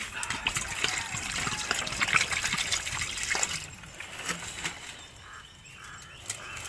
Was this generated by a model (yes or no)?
no